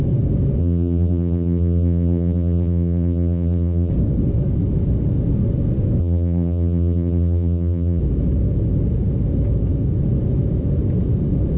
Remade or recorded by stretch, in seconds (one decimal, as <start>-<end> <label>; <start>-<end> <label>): 0.0-0.6 recorded; 0.6-3.9 remade; 3.9-6.0 recorded; 6.0-8.0 remade; 8.0-11.6 recorded